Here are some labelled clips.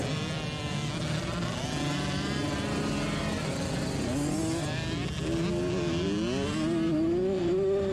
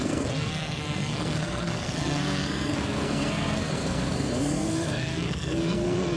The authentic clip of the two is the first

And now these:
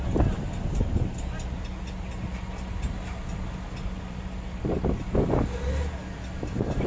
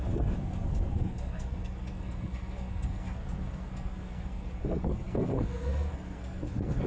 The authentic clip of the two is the first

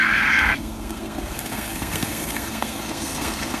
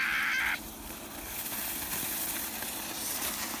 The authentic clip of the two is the second